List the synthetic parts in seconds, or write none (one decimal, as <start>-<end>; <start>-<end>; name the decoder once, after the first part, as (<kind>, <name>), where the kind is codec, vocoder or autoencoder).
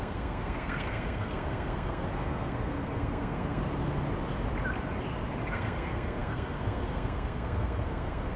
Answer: 0.0-3.6 (codec, SNAC); 5.5-8.4